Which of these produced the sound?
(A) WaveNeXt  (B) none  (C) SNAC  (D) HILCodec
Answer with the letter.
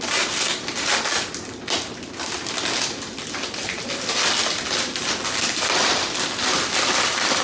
B